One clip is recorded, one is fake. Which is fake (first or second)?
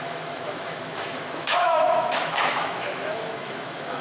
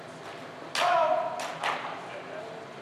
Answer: first